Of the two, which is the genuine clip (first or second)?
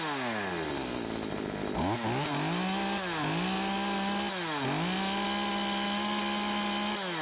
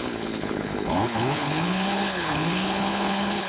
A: first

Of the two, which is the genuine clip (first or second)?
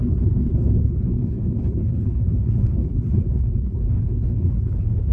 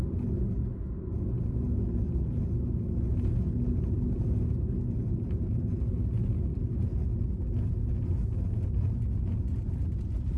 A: second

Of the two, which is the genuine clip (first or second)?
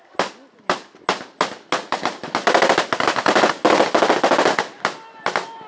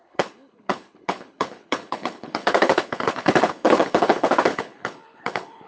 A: first